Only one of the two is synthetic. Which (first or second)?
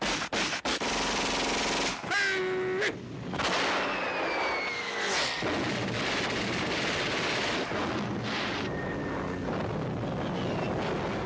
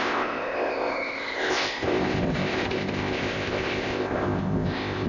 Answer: second